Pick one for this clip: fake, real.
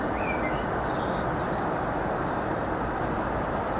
real